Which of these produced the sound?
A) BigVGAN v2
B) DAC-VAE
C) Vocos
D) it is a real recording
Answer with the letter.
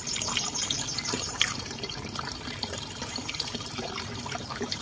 A